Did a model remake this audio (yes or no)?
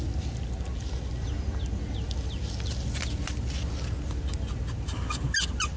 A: no